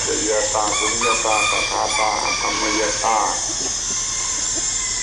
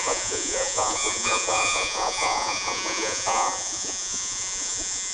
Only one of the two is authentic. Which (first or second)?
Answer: first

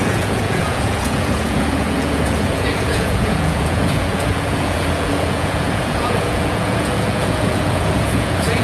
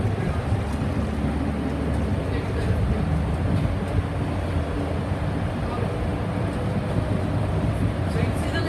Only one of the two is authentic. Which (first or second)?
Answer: second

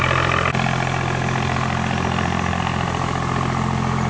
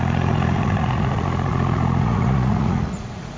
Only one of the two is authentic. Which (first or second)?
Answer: first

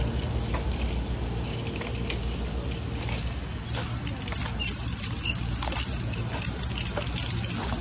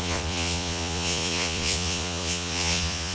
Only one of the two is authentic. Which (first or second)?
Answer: first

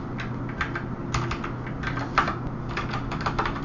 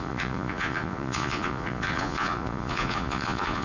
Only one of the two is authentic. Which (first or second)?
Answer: first